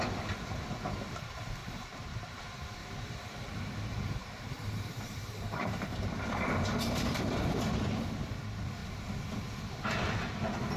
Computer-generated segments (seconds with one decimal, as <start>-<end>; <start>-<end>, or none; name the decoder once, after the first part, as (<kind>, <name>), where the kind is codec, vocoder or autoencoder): 1.6-2.4 (vocoder, BigVGAN v2); 2.8-7.2